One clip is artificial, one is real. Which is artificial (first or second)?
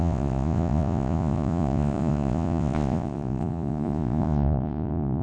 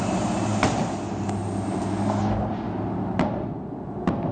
first